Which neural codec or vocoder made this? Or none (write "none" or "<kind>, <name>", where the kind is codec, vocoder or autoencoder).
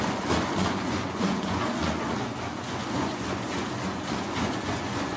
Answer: vocoder, Vocos